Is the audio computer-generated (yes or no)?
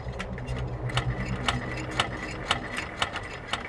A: no